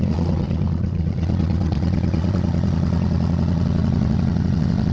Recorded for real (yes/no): no